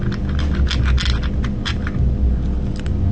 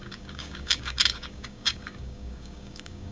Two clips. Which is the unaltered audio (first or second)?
first